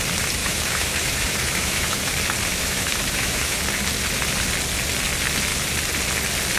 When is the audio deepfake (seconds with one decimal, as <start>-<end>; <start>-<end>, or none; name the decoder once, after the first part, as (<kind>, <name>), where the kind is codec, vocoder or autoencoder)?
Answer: 0.4-2.1 (autoencoder, DAC-VAE); 2.5-3.6